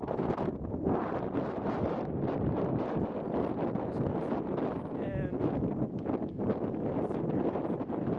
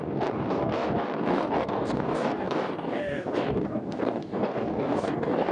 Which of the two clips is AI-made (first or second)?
second